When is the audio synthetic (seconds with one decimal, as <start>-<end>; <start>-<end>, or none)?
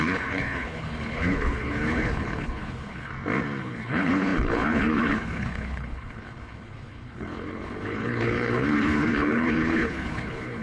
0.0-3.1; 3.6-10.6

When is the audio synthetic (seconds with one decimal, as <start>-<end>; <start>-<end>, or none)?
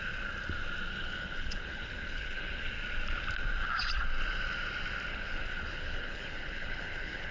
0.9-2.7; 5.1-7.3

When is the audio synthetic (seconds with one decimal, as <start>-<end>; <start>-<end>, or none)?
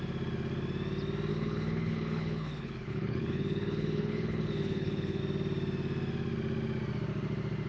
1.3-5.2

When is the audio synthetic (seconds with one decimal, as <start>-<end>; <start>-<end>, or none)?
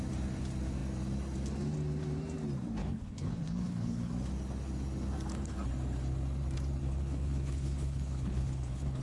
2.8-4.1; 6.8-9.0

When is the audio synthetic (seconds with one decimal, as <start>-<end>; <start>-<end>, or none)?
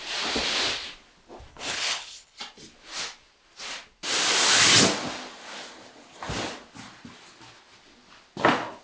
1.5-2.4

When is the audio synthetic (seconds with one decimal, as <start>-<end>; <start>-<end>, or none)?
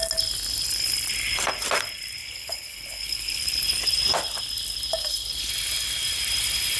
2.2-3.4; 5.0-5.5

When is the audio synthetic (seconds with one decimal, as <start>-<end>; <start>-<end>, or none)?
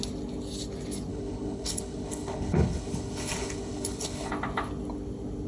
1.1-4.3